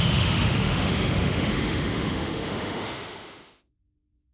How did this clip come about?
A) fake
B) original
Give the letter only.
A